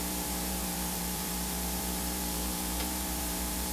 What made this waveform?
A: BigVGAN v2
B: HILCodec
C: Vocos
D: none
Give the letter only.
A